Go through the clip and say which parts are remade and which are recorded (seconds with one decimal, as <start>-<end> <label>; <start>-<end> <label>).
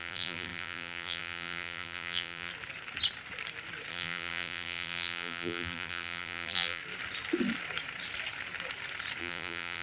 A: 0.0-2.5 remade; 2.5-3.9 recorded; 3.9-6.8 remade; 6.8-9.2 recorded; 9.2-9.8 remade